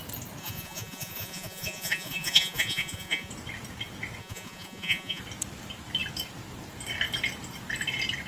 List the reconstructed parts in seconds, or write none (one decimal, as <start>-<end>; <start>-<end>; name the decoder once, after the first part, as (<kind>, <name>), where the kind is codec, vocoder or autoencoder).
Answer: 0.4-3.3 (vocoder, Vocos); 4.2-5.2